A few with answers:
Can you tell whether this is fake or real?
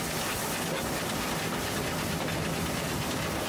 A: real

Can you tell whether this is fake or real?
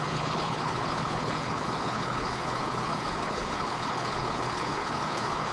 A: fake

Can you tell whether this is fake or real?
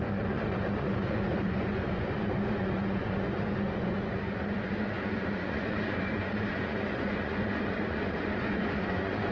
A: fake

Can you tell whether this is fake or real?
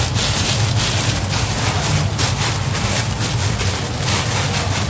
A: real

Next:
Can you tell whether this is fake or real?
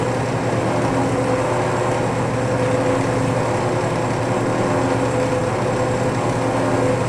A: real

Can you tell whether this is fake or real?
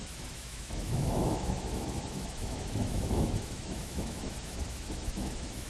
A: fake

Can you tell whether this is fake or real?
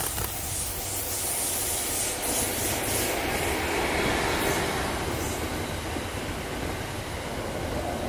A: real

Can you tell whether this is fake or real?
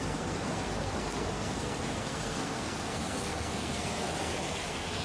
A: fake